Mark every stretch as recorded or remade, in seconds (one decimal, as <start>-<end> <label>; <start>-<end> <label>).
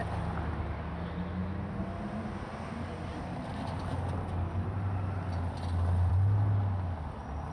0.0-7.5 recorded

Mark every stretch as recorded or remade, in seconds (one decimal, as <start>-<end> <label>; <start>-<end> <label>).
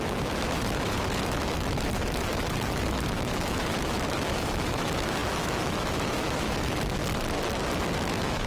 0.0-7.0 remade; 7.0-7.8 recorded; 7.8-8.5 remade